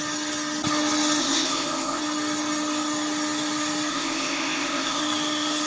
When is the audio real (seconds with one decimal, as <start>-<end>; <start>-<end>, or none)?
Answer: 0.0-1.2; 2.0-3.9; 5.0-5.7